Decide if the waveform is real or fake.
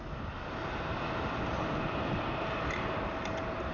real